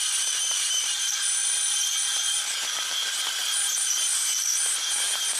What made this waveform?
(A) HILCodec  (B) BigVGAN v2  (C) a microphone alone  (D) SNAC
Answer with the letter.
B